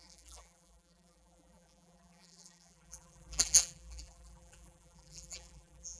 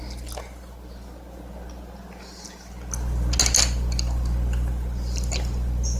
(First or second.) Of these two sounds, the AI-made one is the first